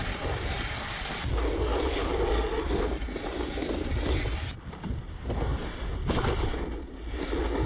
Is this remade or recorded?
recorded